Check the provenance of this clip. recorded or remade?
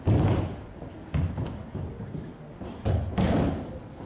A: recorded